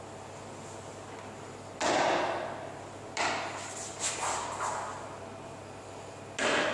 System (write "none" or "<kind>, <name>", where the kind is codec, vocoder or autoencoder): none